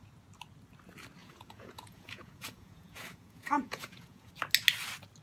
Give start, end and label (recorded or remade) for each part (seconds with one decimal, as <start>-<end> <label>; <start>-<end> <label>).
0.0-1.2 recorded; 1.2-4.3 remade; 4.3-5.2 recorded